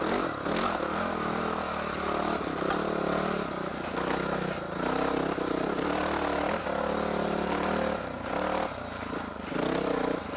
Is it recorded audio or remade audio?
recorded